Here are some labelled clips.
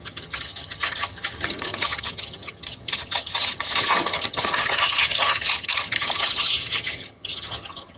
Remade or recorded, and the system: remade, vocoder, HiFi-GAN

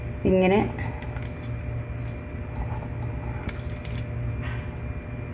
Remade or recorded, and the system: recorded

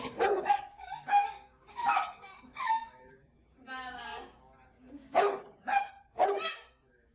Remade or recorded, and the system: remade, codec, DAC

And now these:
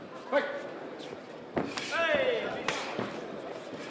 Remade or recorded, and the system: recorded